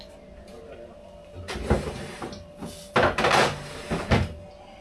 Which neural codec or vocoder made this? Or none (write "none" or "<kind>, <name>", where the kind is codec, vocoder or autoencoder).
none